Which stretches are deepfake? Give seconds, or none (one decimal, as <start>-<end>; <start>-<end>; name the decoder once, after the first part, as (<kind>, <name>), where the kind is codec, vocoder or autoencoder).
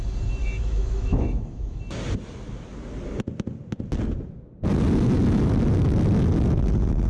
0.4-1.8 (autoencoder, DAC-VAE)